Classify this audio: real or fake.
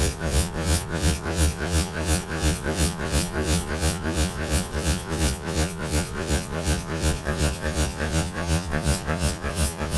fake